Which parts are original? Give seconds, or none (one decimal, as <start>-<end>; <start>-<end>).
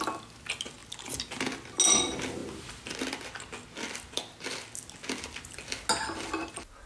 0.0-6.9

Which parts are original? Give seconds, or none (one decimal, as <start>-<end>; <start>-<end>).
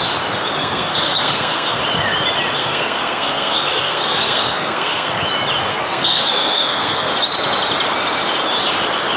0.0-0.6; 1.8-2.6; 5.2-5.7; 7.1-9.2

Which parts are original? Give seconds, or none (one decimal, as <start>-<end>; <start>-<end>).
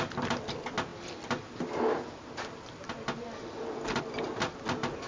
0.0-5.1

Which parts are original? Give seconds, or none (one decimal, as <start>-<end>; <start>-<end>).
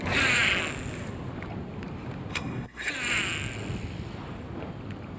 0.0-2.3; 2.9-5.2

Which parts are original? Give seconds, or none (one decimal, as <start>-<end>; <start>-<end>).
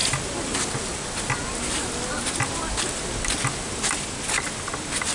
0.0-5.1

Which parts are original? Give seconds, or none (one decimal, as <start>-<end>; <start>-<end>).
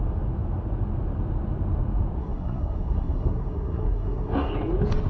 0.0-2.2; 4.5-5.1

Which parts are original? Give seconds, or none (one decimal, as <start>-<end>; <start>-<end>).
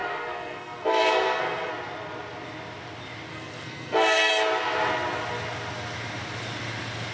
1.7-3.3; 4.3-7.1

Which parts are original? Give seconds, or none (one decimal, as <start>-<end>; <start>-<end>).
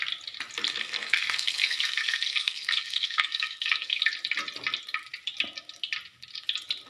0.0-0.7; 4.0-6.9